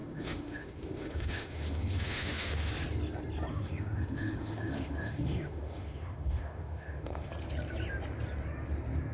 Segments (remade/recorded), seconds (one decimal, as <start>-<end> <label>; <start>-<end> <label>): 0.0-2.7 remade; 2.7-3.5 recorded; 3.5-7.3 remade; 7.3-9.1 recorded